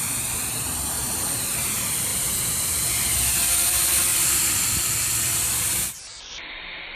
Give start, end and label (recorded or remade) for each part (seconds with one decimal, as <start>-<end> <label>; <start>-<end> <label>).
0.0-7.0 remade